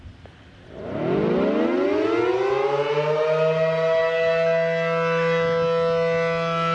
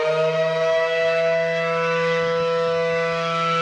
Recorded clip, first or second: first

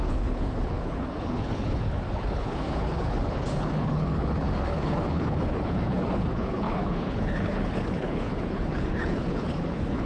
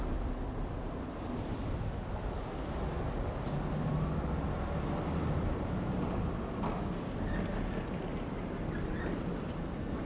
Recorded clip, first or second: second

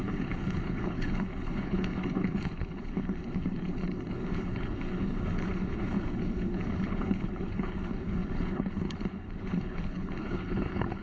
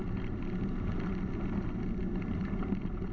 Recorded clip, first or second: second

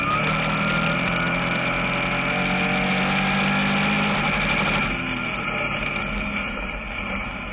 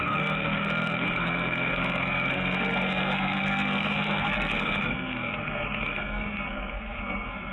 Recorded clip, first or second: first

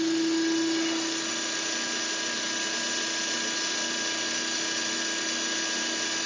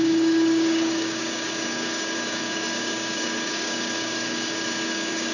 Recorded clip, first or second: first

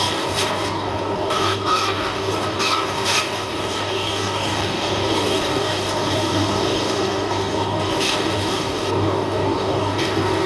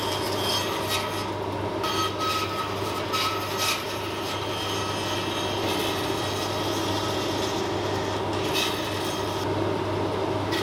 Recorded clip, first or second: second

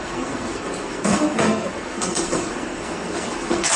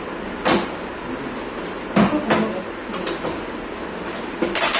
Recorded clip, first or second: second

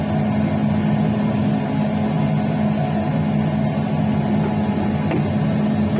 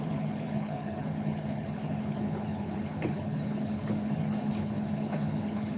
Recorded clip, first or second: first